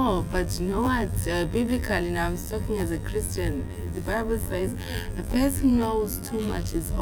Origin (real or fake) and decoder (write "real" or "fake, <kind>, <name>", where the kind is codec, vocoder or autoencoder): fake, vocoder, BigVGAN v2